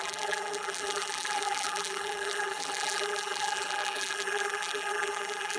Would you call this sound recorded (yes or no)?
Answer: no